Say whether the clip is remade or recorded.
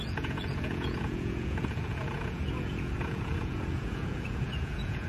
remade